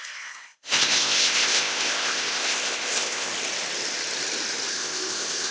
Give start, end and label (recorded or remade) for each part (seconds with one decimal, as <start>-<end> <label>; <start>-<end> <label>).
0.0-3.3 remade; 3.3-4.7 recorded; 4.7-5.5 remade